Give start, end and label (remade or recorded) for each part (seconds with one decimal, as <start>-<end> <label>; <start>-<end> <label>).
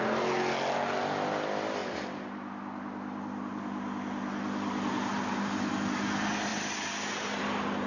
0.0-7.9 recorded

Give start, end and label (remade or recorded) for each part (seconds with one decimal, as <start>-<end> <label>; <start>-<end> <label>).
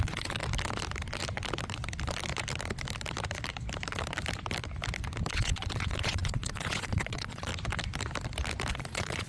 0.0-0.4 remade; 0.4-5.3 recorded; 5.3-7.5 remade; 7.5-8.7 recorded; 8.7-9.3 remade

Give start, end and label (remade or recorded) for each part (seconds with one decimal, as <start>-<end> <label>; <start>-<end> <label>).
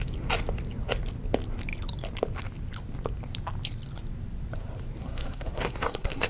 0.0-5.0 recorded; 5.0-6.3 remade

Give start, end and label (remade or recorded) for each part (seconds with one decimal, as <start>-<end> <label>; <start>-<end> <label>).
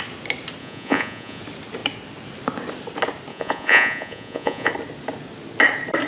0.0-0.6 recorded; 0.6-1.4 remade; 1.4-3.3 recorded; 3.3-4.7 remade; 4.7-6.1 recorded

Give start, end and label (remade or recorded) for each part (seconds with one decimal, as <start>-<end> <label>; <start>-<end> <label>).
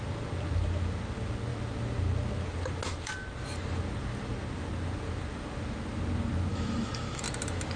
0.0-6.5 recorded; 6.5-7.2 remade; 7.2-7.8 recorded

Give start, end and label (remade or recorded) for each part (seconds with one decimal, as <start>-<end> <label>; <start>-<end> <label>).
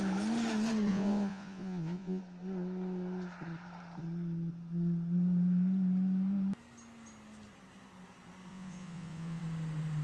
0.0-0.9 recorded; 0.9-2.2 remade; 2.2-8.5 recorded; 8.5-9.4 remade; 9.4-10.0 recorded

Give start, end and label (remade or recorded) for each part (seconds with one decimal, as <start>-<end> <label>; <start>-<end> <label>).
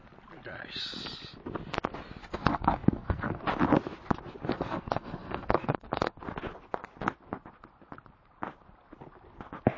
0.0-2.2 recorded; 2.2-3.4 remade; 3.4-4.5 recorded; 4.5-6.2 remade; 6.2-9.8 recorded